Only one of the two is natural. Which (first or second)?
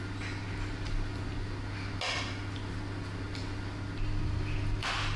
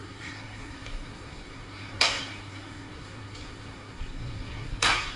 first